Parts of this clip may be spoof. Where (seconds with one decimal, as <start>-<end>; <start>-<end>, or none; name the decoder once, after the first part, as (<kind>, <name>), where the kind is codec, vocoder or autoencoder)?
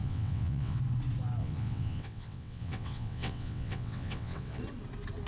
0.0-0.8 (vocoder, WaveNeXt); 1.4-4.6